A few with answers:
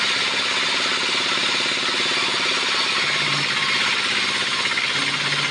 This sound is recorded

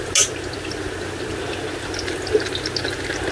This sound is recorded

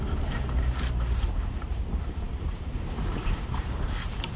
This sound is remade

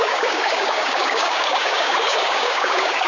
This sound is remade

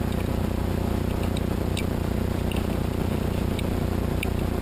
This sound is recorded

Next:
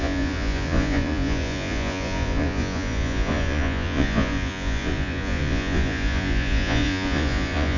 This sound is remade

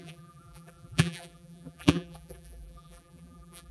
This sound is remade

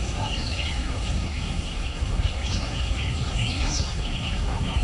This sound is remade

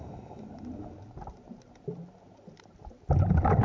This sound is recorded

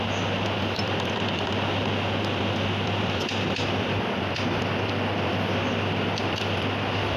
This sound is recorded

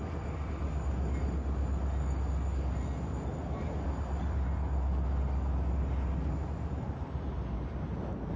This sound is recorded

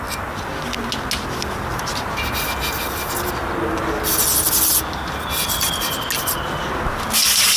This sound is recorded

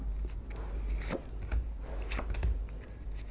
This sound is recorded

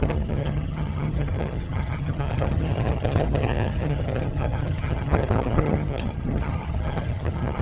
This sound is remade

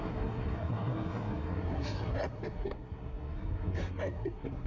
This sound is remade